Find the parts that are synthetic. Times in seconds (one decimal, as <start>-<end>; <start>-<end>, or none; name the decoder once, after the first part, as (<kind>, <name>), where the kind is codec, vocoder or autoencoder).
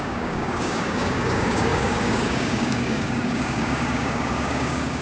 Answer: 0.0-5.0 (codec, DAC)